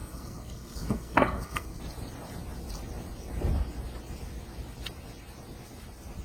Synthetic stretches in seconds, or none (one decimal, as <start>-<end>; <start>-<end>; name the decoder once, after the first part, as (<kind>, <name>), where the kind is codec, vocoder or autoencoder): 0.0-1.8 (codec, SNAC)